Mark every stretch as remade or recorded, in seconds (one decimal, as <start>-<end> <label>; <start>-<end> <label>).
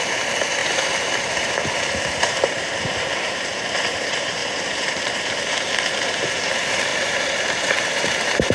0.0-8.5 remade